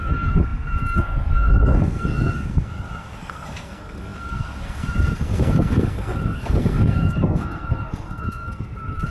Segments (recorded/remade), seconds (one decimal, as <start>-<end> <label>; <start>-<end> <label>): 0.0-9.1 remade